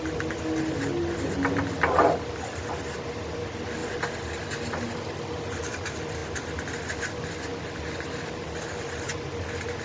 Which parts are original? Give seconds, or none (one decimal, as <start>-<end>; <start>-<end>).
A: 0.0-9.8